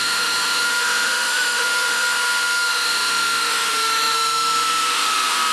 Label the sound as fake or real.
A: fake